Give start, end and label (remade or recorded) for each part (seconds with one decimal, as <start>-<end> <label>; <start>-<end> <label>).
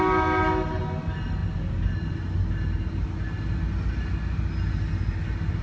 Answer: 0.0-5.6 recorded